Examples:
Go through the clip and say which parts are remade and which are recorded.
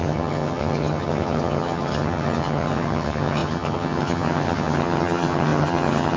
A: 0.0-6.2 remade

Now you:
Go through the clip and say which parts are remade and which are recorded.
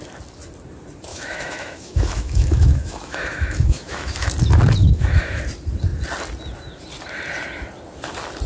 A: 0.0-1.1 recorded; 1.1-4.3 remade; 4.3-4.8 recorded; 4.8-5.4 remade; 5.4-8.5 recorded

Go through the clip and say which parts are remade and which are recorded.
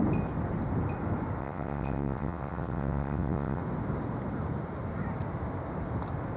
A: 0.0-1.4 recorded; 1.4-3.6 remade; 3.6-6.4 recorded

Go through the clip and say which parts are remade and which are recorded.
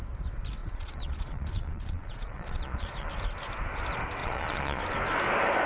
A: 0.0-0.6 recorded; 0.6-3.1 remade; 3.1-4.2 recorded; 4.2-4.8 remade; 4.8-5.7 recorded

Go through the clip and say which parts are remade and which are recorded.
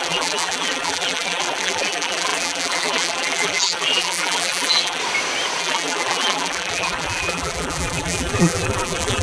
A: 0.0-5.0 remade; 5.0-5.6 recorded; 5.6-9.2 remade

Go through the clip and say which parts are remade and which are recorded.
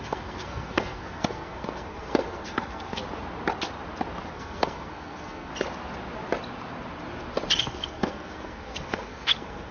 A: 0.0-3.0 remade; 3.0-4.3 recorded; 4.3-5.5 remade; 5.5-7.6 recorded; 7.6-9.7 remade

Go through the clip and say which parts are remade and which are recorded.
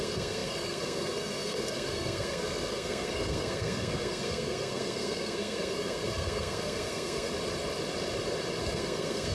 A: 0.0-7.3 remade; 7.3-8.6 recorded; 8.6-9.3 remade